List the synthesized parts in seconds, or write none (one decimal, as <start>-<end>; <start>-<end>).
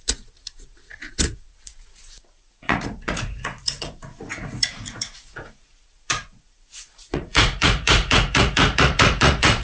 0.0-9.6